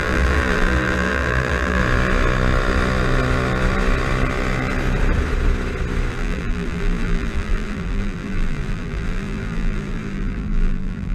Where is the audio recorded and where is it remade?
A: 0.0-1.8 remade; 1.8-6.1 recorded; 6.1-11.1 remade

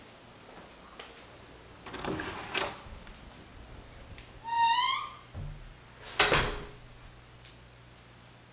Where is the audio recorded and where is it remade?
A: 0.0-8.5 recorded

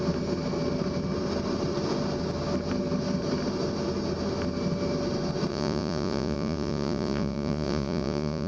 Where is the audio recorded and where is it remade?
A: 0.0-5.5 recorded; 5.5-8.5 remade

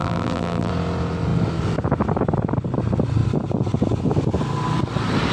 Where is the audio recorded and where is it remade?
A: 0.0-0.7 remade; 0.7-5.3 recorded

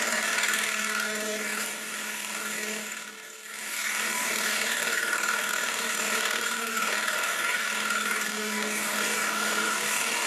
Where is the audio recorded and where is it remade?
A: 0.0-10.3 remade

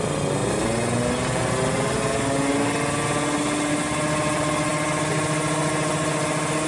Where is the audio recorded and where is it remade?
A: 0.0-6.7 recorded

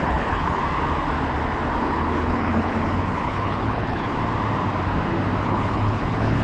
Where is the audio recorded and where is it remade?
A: 0.0-0.6 remade; 0.6-1.8 recorded; 1.8-4.1 remade; 4.1-5.4 recorded; 5.4-6.4 remade

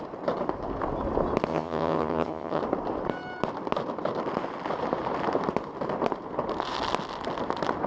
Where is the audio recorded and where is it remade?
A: 0.0-1.5 recorded; 1.5-2.6 remade; 2.6-7.9 recorded